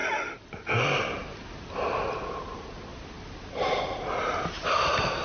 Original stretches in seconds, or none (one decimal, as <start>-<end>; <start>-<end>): 0.0-5.2

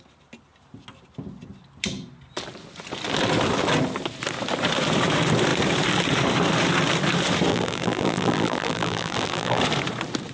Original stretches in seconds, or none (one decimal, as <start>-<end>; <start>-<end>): 0.0-7.5; 9.6-10.3

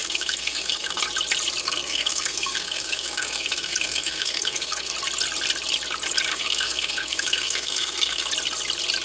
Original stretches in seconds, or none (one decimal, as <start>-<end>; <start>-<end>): 1.0-1.6; 4.9-6.3; 8.3-9.0

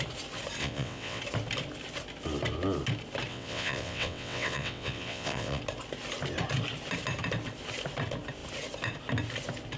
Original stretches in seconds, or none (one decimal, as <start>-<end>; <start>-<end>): 0.0-0.6; 1.2-3.3; 5.6-9.8

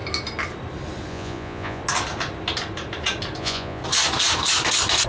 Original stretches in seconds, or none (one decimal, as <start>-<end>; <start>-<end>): 0.0-1.1; 1.8-3.4; 3.8-5.1